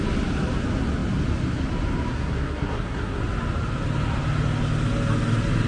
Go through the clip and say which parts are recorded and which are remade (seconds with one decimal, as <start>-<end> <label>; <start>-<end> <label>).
0.0-2.1 recorded; 2.1-3.2 remade; 3.2-5.7 recorded